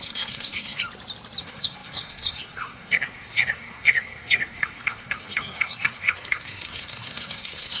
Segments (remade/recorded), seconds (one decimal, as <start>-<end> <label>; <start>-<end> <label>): 0.0-0.8 remade; 0.8-1.4 recorded; 1.4-7.8 remade

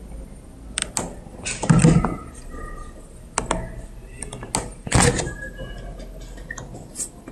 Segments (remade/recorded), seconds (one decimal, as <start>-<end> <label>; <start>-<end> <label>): 0.0-7.3 recorded